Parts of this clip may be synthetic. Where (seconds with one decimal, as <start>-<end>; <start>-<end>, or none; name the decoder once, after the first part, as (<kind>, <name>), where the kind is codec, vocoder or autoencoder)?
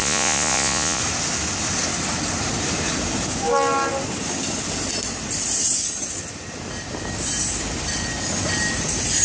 0.0-1.0 (vocoder, Vocos)